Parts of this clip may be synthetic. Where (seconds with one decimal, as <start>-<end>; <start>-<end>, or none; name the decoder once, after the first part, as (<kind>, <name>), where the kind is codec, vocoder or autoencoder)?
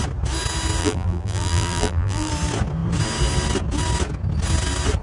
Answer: 0.8-2.3 (vocoder, BigVGAN v2)